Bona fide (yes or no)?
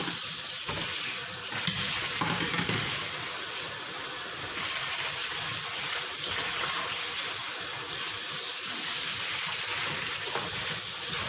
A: yes